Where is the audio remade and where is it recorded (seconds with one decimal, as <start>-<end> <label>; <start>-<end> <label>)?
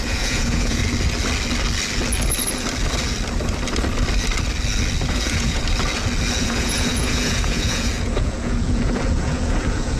0.0-0.8 remade; 0.8-5.1 recorded; 5.1-5.6 remade; 5.6-6.4 recorded; 6.4-10.0 remade